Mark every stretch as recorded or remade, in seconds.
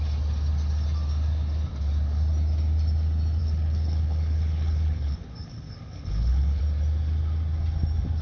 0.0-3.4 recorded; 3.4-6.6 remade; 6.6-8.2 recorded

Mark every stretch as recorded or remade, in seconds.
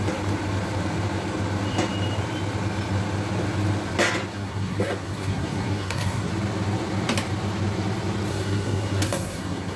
0.0-4.3 recorded; 4.3-6.3 remade; 6.3-8.3 recorded; 8.3-9.8 remade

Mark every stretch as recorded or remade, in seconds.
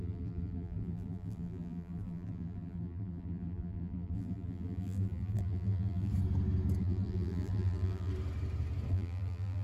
0.0-6.1 remade; 6.1-6.8 recorded; 6.8-8.1 remade; 8.1-8.9 recorded; 8.9-9.6 remade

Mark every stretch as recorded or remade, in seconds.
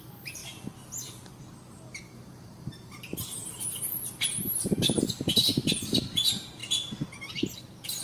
0.0-0.4 remade; 0.4-2.0 recorded; 2.0-6.6 remade; 6.6-7.3 recorded; 7.3-8.0 remade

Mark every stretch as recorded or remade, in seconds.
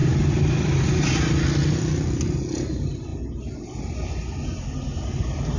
0.0-5.6 recorded